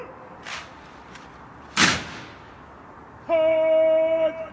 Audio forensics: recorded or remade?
recorded